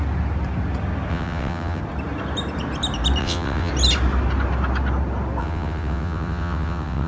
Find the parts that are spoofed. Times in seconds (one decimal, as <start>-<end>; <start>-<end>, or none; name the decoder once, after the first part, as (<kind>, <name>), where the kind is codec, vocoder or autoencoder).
1.1-1.8 (vocoder, WaveNeXt); 3.2-3.7; 5.4-7.1